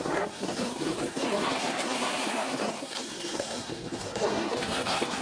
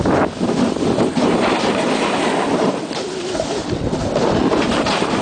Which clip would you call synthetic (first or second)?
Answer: first